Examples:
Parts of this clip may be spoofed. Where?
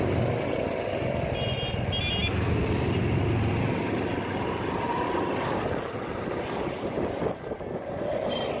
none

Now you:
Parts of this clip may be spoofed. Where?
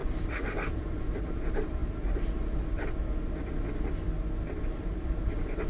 none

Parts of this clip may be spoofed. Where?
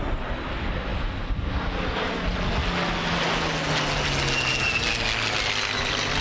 none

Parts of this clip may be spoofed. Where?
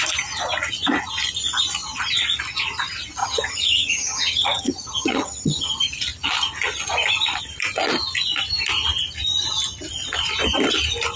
3.2-5.7 (vocoder, HiFi-GAN)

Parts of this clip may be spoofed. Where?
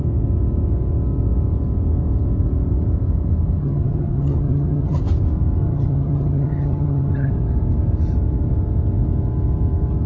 3.6-5.0 (vocoder, HiFi-GAN); 5.6-7.3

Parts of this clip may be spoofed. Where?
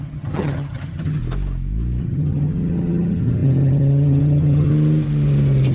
0.0-1.2 (vocoder, HiFi-GAN); 2.0-4.7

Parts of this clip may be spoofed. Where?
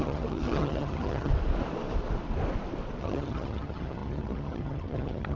0.0-1.3 (vocoder, HiFi-GAN); 3.0-5.4